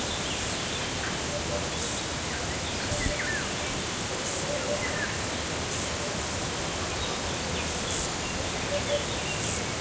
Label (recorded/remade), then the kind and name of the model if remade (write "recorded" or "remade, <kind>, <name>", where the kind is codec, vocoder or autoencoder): recorded